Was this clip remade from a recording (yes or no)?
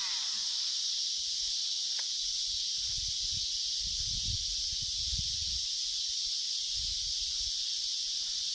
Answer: no